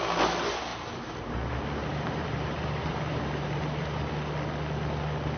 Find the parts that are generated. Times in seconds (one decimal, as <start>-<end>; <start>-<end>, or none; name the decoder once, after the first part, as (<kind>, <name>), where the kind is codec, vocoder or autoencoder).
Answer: 0.7-1.3 (vocoder, BigVGAN v2); 1.8-4.1